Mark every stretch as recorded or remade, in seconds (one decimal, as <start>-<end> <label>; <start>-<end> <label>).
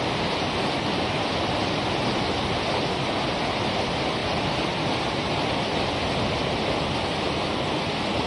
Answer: 0.0-4.2 recorded; 4.2-7.9 remade; 7.9-8.3 recorded